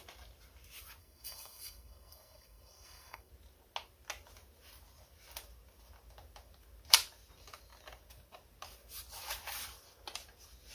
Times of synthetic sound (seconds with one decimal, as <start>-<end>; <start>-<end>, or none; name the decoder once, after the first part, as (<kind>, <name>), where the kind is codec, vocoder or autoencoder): 1.0-3.3 (codec, SNAC)